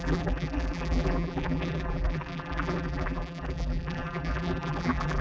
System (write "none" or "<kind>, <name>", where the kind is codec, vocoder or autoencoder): vocoder, BigVGAN v2